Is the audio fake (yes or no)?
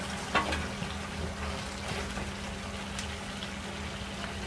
no